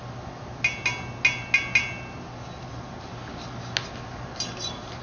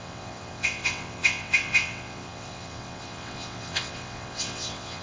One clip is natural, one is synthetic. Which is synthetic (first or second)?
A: second